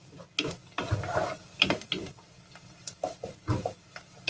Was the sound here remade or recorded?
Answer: recorded